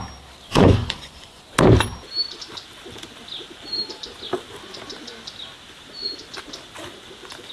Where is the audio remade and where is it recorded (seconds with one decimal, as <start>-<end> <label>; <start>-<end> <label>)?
0.0-0.5 recorded; 0.5-1.4 remade; 1.4-7.5 recorded